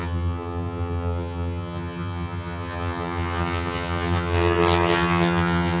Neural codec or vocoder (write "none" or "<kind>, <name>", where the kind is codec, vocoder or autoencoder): vocoder, HiFi-GAN